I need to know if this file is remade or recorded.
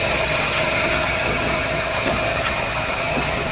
remade